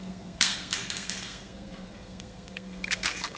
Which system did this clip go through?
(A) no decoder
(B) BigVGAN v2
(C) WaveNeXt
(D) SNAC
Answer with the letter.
D